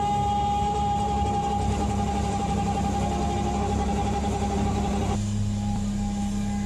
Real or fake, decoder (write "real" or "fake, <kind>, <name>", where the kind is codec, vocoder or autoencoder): real